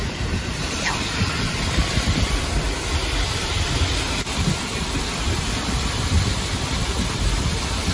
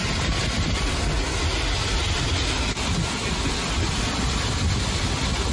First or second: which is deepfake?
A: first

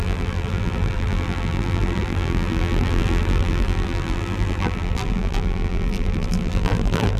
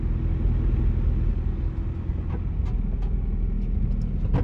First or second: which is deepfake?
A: first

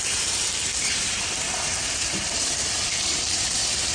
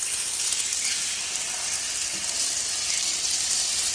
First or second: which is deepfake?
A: first